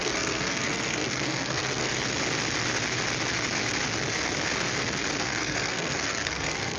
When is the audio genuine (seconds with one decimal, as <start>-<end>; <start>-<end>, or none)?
1.9-5.2